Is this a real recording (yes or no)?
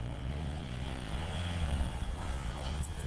no